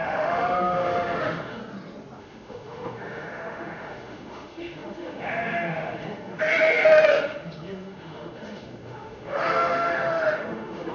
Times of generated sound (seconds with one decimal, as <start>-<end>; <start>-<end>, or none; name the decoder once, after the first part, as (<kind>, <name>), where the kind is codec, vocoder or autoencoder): 0.0-1.6 (autoencoder, DAC-VAE); 2.2-10.9